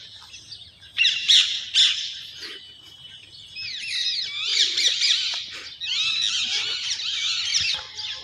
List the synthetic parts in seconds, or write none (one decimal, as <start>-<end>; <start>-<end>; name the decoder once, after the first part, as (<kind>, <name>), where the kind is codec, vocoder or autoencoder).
0.9-1.6 (vocoder, BigVGAN v2); 4.5-5.0